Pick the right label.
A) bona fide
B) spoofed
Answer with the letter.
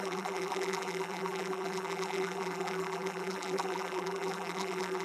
B